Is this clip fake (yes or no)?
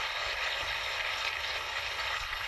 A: yes